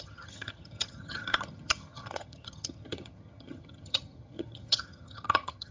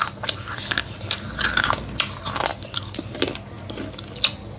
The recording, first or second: second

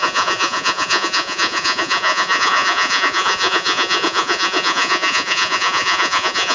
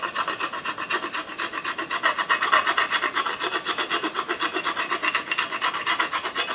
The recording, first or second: second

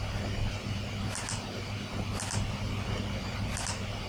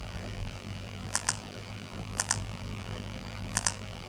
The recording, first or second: first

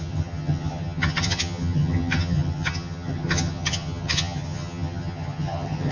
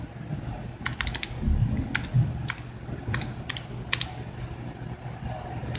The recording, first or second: second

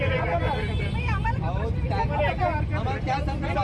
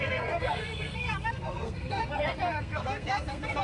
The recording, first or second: first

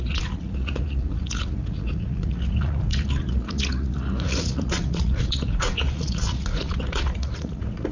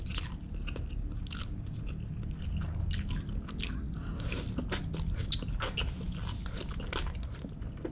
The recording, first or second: second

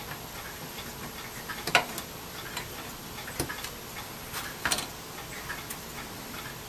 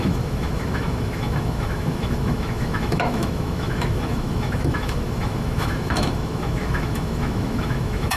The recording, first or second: first